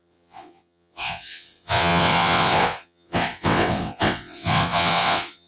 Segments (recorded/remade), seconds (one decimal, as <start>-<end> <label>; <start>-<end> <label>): 0.0-5.5 remade